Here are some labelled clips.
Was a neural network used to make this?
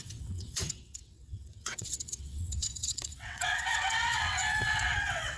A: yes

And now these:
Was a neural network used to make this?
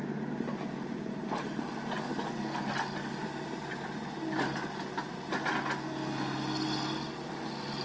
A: no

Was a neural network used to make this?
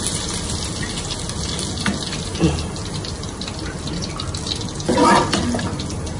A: no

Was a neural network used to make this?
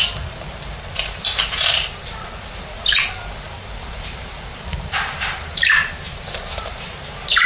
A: yes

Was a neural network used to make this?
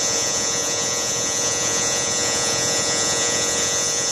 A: yes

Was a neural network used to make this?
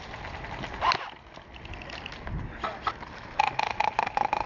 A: no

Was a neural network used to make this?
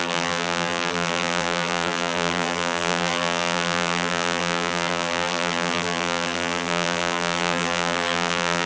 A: yes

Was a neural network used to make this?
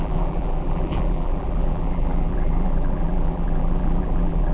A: yes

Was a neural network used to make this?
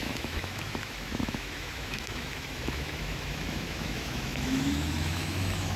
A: yes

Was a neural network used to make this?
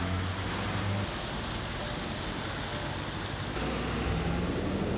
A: no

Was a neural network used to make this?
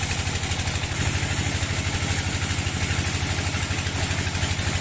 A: no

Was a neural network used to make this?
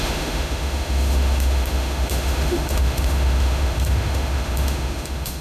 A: yes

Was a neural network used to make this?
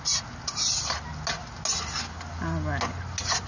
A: no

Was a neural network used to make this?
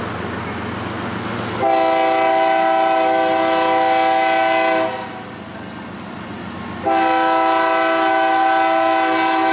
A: no